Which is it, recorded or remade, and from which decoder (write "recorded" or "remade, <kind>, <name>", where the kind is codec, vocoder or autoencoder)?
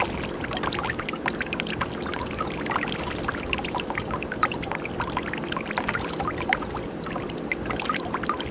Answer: remade, vocoder, BigVGAN v2